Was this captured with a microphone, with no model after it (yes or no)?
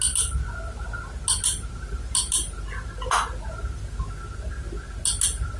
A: yes